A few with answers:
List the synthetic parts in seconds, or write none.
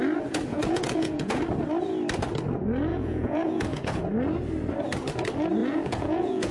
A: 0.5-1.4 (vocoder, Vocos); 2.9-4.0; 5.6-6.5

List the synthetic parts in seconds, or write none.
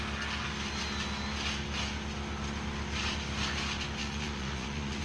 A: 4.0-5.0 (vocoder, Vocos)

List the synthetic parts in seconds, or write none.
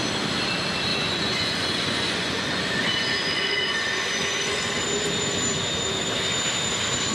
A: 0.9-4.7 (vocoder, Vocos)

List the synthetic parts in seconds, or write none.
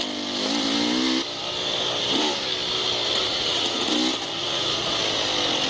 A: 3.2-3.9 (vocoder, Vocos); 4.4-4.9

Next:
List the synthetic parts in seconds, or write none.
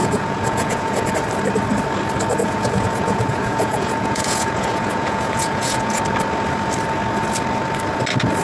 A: 0.0-1.1 (vocoder, Vocos); 2.4-6.0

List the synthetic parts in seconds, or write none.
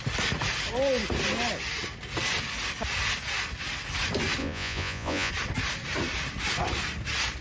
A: 4.4-5.3 (vocoder, Vocos)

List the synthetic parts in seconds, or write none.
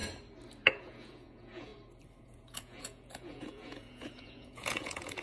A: 0.8-1.7 (vocoder, Vocos); 2.2-5.2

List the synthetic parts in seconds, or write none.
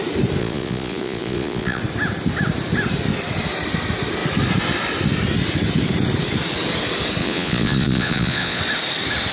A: 0.4-1.8 (vocoder, Vocos); 7.2-8.6